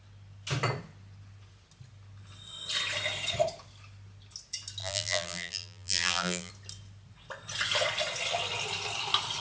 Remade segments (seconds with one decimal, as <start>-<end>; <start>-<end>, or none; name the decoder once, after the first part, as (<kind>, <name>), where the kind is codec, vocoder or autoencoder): 4.8-6.5 (vocoder, BigVGAN v2)